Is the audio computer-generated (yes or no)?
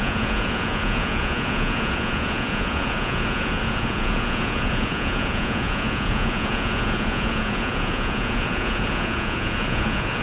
yes